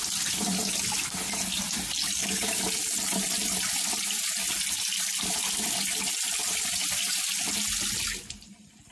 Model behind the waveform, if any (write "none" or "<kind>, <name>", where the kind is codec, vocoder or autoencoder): none